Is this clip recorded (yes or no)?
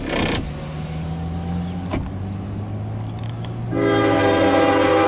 yes